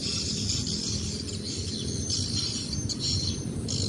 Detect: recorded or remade recorded